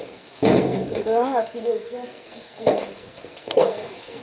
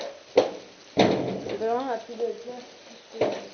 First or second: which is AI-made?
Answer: first